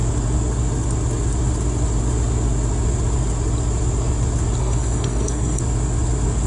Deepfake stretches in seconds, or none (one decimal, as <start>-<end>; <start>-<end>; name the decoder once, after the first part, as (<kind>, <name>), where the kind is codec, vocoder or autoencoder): 4.6-5.6 (codec, SNAC)